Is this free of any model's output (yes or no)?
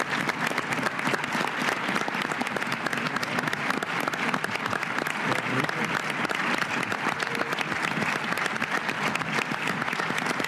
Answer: yes